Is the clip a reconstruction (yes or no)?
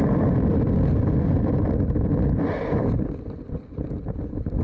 no